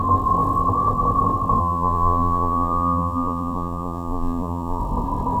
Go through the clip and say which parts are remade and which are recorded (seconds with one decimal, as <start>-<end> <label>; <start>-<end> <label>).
0.0-1.6 recorded; 1.6-4.8 remade; 4.8-5.4 recorded